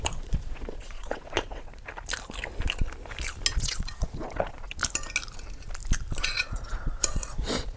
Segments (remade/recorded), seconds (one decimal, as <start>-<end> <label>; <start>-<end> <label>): 0.0-1.7 remade; 1.7-3.5 recorded; 3.5-4.8 remade; 4.8-6.2 recorded; 6.2-7.8 remade